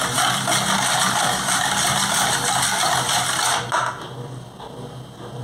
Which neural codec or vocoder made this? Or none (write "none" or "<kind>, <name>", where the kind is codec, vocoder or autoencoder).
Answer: none